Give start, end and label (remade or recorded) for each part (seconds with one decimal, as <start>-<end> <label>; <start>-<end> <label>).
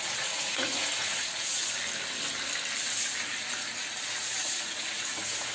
0.0-1.6 remade; 1.6-4.4 recorded; 4.4-5.5 remade